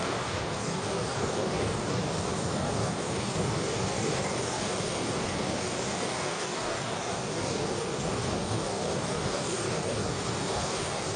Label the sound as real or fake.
fake